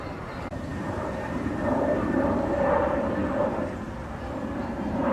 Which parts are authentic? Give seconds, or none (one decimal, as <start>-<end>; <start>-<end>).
3.2-4.6